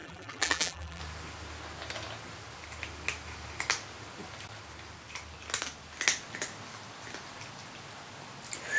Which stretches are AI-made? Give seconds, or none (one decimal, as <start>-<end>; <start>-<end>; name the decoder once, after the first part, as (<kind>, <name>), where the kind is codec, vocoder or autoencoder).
0.0-1.0 (vocoder, BigVGAN v2)